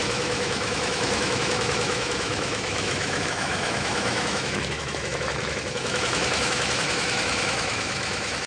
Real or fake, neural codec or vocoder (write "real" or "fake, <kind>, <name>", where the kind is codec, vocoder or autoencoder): fake, autoencoder, DAC-VAE